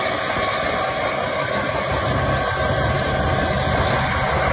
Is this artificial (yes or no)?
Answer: no